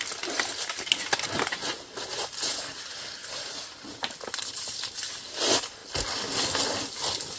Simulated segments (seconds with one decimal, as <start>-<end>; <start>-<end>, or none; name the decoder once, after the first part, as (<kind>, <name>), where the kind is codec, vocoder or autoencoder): none